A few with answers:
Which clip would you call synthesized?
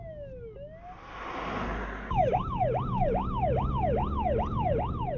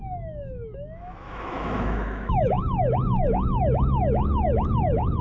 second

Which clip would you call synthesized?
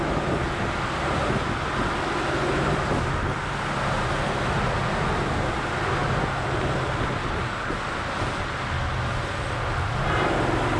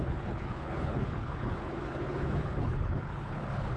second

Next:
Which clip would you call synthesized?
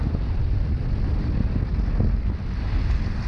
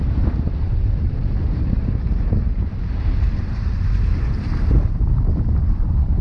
second